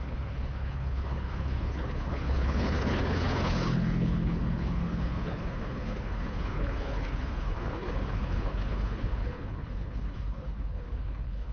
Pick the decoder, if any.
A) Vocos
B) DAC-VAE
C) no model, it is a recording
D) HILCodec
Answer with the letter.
D